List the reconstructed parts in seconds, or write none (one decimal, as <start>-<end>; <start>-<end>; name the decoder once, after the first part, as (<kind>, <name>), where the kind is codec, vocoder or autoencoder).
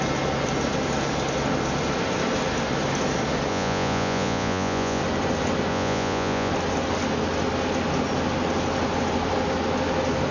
3.5-5.0 (vocoder, Vocos); 5.7-6.5